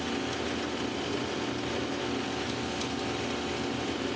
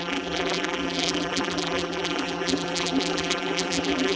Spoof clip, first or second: second